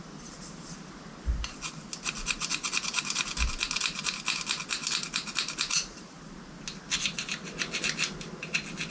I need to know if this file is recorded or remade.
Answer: recorded